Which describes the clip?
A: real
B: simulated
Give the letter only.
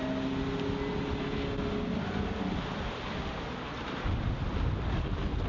A